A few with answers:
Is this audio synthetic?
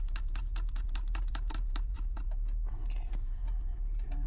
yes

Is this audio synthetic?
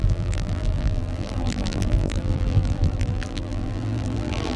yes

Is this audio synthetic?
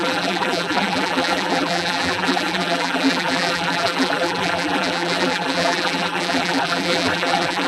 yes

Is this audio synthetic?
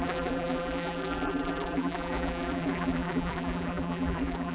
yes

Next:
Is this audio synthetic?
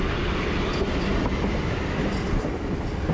no